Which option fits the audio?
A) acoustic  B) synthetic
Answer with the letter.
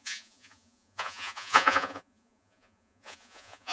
B